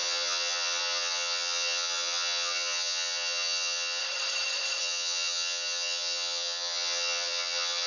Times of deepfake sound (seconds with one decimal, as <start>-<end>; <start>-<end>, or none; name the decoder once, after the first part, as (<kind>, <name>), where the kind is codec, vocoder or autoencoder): 0.0-4.0 (vocoder, HiFi-GAN); 4.8-7.9